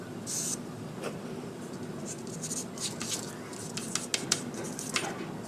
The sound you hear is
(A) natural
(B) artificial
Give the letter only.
A